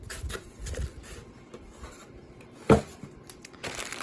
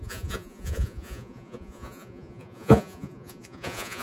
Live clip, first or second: first